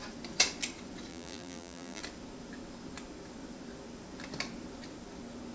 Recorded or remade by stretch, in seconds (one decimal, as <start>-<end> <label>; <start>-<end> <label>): 0.0-1.1 recorded; 1.1-2.0 remade; 2.0-5.5 recorded